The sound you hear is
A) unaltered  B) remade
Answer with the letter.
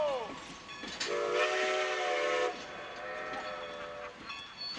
A